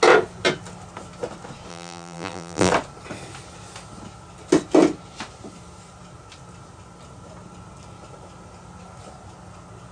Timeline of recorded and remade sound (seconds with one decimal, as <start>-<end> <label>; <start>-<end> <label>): 0.0-1.7 recorded; 1.7-2.7 remade; 2.7-9.9 recorded